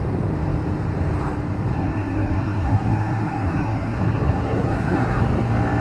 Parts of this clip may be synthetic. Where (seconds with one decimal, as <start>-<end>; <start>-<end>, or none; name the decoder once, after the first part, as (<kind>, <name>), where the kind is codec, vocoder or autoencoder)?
1.7-5.2 (codec, SNAC)